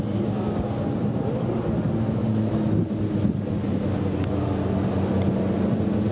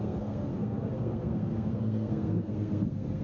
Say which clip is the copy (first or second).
second